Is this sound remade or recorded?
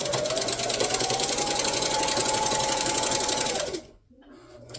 remade